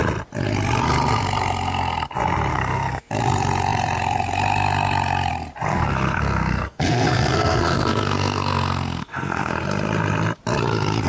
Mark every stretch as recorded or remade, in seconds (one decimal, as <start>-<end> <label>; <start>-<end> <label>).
0.0-2.5 recorded; 2.5-3.1 remade; 3.1-5.7 recorded; 5.7-9.5 remade; 9.5-11.1 recorded